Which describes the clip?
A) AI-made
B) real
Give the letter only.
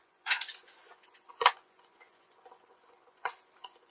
A